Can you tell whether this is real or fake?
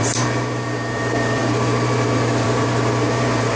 fake